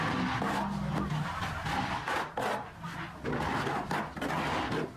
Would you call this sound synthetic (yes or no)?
no